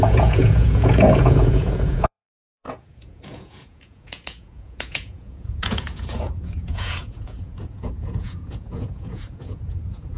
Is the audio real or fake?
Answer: fake